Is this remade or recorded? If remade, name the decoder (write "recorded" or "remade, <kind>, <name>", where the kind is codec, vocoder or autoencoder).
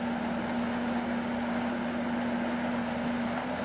recorded